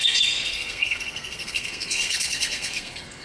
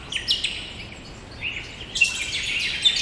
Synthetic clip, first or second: first